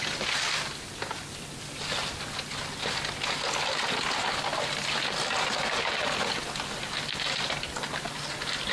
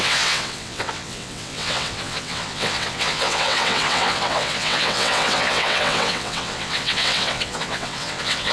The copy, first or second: second